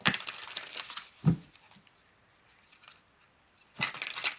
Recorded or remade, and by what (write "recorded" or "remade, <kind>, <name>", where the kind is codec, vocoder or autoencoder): recorded